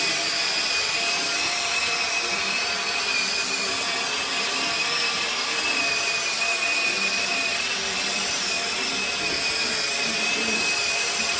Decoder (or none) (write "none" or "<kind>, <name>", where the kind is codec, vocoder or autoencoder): vocoder, BigVGAN v2